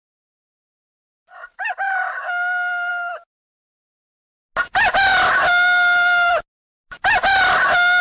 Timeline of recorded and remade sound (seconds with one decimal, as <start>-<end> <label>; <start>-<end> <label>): 0.0-2.9 remade; 2.9-8.0 recorded